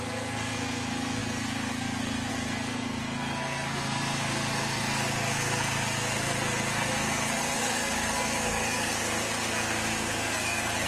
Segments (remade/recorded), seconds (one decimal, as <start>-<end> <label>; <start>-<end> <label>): 0.0-10.9 remade